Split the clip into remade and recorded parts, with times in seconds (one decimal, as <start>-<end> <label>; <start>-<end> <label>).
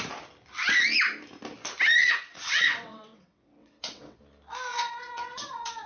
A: 0.0-2.0 recorded; 2.0-4.2 remade; 4.2-4.7 recorded; 4.7-5.9 remade